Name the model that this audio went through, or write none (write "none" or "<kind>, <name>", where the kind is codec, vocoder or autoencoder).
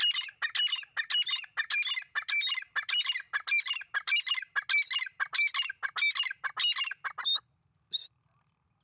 none